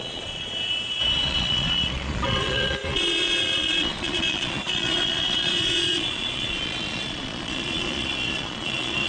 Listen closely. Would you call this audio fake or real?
fake